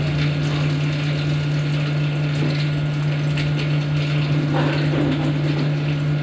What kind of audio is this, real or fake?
real